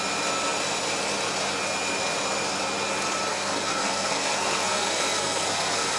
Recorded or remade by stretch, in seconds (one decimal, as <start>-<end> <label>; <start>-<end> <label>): 0.0-3.3 recorded; 3.3-6.0 remade